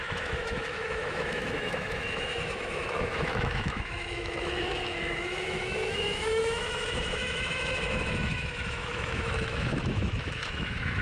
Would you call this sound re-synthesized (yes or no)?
yes